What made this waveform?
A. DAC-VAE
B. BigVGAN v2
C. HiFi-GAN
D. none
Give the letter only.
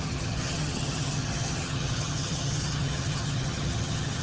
C